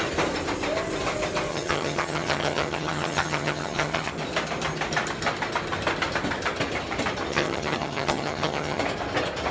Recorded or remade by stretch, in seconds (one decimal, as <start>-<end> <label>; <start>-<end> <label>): 0.0-1.5 recorded; 1.5-4.1 remade; 4.1-7.3 recorded; 7.3-8.8 remade; 8.8-9.5 recorded